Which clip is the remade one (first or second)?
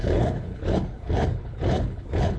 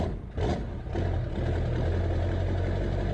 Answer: first